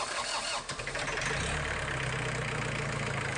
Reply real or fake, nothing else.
real